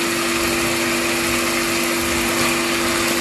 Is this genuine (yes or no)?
yes